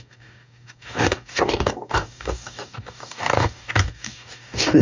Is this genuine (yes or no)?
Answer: no